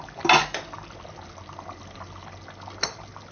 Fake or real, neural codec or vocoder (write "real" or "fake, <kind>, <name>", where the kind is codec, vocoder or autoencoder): real